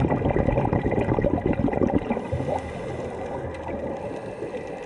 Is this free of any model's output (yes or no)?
yes